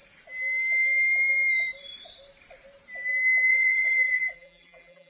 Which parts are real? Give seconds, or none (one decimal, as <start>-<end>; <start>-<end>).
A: 0.0-3.5